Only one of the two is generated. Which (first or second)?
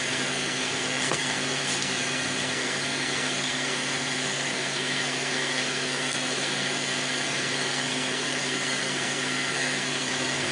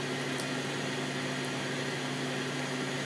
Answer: first